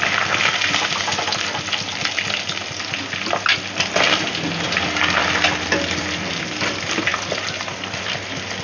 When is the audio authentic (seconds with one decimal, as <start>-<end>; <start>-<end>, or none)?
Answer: 0.0-8.6